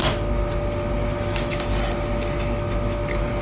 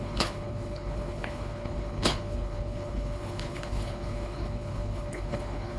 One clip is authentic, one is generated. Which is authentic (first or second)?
first